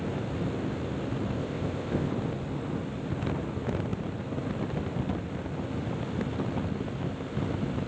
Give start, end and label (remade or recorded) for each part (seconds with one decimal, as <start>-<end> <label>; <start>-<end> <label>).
0.0-1.4 recorded; 1.4-2.1 remade; 2.1-7.9 recorded